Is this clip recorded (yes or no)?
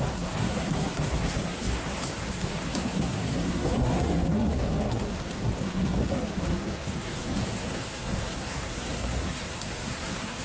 no